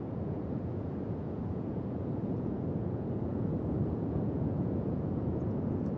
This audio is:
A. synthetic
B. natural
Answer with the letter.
A